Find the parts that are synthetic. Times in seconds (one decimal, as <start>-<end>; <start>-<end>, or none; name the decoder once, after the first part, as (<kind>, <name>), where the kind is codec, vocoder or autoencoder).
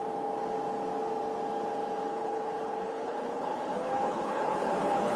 2.1-5.2 (codec, HILCodec)